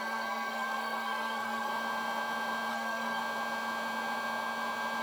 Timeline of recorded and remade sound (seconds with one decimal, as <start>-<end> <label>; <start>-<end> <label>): 0.0-1.7 remade; 1.7-2.7 recorded; 2.7-3.2 remade; 3.2-5.0 recorded